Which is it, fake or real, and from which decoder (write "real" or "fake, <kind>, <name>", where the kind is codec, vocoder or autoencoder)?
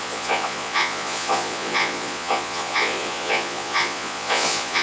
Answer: fake, vocoder, Vocos